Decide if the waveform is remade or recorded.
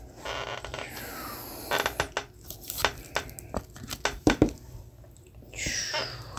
recorded